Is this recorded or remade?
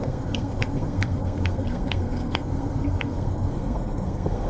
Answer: remade